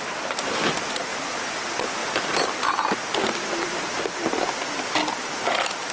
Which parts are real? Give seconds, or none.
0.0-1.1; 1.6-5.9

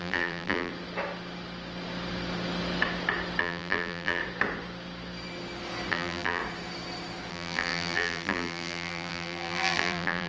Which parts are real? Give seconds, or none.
0.7-3.4; 4.2-5.9; 6.4-7.3

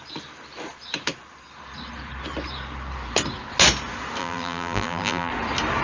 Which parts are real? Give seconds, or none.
0.0-4.2; 5.3-5.8

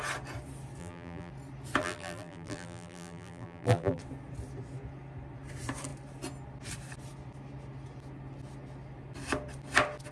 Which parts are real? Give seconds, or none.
0.0-0.8; 1.3-1.8; 4.0-10.1